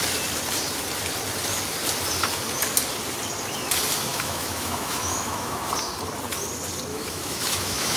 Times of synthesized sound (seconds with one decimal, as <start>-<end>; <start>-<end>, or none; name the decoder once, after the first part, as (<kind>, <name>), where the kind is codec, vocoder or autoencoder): 4.1-5.7 (autoencoder, DAC-VAE); 6.9-8.0